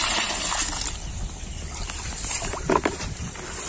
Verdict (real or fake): real